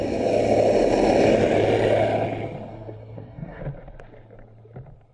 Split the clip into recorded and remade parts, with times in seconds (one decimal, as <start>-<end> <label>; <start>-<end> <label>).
0.0-2.7 recorded; 2.7-3.6 remade; 3.6-5.1 recorded